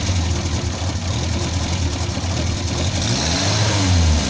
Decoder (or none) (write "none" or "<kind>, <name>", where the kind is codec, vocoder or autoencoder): none